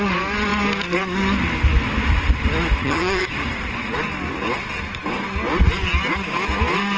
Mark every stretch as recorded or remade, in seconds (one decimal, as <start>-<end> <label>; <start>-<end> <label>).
0.0-2.8 recorded; 2.8-3.3 remade; 3.3-7.0 recorded